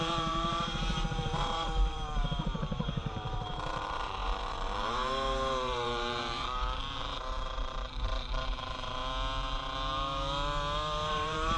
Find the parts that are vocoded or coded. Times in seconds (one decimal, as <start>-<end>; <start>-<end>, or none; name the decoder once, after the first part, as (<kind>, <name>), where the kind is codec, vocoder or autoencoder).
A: 0.0-9.0 (vocoder, BigVGAN v2); 11.1-11.6